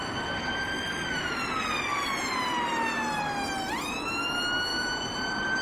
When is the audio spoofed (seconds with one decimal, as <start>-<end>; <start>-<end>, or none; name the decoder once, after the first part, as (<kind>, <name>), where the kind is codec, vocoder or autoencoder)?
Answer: 1.9-2.4 (vocoder, BigVGAN v2); 4.7-5.6